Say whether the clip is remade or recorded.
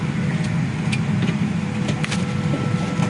recorded